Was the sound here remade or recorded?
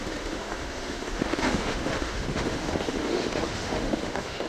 remade